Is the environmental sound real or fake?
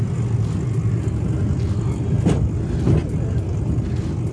real